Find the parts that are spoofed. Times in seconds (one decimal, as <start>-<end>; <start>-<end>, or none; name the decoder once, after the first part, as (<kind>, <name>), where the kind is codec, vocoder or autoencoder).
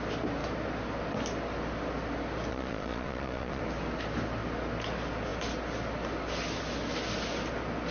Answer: 2.5-3.6 (vocoder, Vocos)